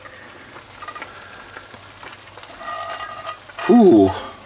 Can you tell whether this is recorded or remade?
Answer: recorded